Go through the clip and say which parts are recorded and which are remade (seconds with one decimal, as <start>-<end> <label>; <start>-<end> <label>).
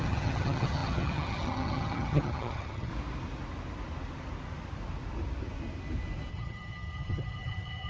0.0-2.9 remade; 2.9-6.3 recorded; 6.3-7.9 remade